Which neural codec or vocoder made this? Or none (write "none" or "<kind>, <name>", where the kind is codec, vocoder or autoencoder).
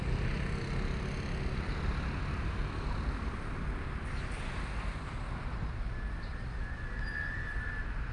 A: none